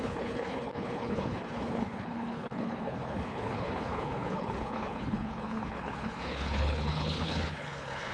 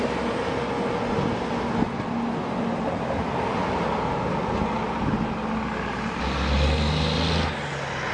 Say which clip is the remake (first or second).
first